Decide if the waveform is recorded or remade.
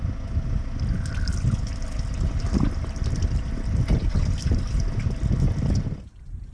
recorded